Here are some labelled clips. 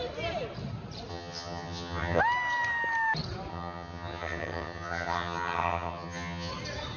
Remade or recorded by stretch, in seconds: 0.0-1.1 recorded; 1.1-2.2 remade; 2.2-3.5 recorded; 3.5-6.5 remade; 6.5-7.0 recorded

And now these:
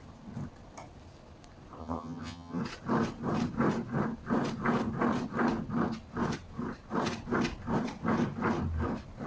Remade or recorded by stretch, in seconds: 0.0-1.8 recorded; 1.8-2.6 remade; 2.6-9.3 recorded

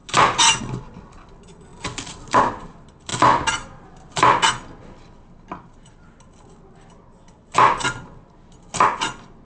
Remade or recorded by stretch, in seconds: 0.0-9.4 recorded

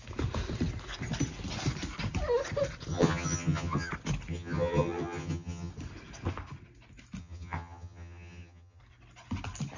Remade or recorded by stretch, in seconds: 0.0-2.9 recorded; 2.9-3.9 remade; 3.9-4.3 recorded; 4.3-5.7 remade; 5.7-7.2 recorded; 7.2-8.8 remade; 8.8-9.8 recorded

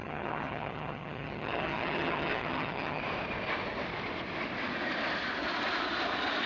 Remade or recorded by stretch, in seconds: 0.0-3.0 remade; 3.0-6.5 recorded